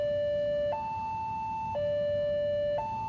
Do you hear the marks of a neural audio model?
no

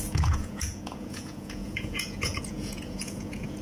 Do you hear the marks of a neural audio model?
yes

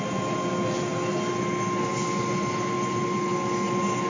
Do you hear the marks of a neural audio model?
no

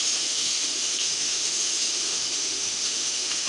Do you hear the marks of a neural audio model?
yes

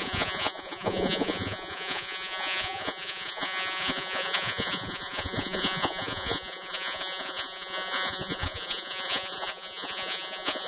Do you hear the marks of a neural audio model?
yes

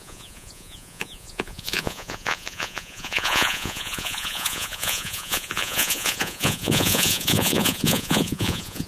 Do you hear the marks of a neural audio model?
yes